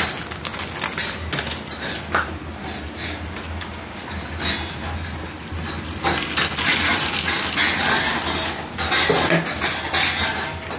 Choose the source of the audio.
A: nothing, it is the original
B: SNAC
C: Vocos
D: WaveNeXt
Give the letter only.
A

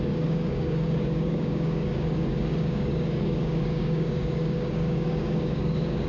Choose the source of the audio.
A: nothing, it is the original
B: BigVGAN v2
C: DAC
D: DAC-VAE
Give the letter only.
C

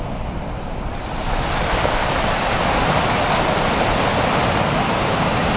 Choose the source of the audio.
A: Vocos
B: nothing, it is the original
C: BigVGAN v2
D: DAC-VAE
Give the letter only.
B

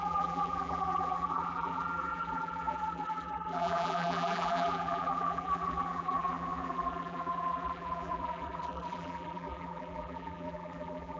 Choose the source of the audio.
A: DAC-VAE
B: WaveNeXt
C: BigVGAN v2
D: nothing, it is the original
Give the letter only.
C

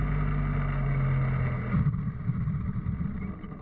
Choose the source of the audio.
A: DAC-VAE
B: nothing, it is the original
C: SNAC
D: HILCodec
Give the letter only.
B